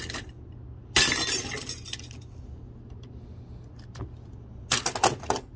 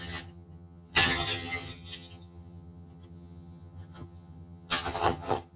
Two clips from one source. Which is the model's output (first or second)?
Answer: second